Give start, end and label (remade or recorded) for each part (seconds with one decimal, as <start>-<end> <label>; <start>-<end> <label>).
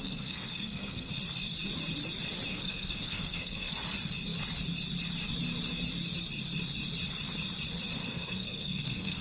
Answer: 0.0-1.1 remade; 1.1-2.5 recorded; 2.5-3.7 remade; 3.7-8.0 recorded; 8.0-9.2 remade